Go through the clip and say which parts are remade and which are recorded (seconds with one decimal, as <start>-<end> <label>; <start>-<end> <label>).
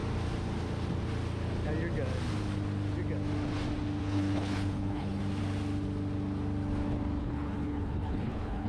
0.0-4.0 recorded; 4.0-5.2 remade; 5.2-7.2 recorded; 7.2-8.7 remade